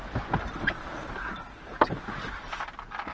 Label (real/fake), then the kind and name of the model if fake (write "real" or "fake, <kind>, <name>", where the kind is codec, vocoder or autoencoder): real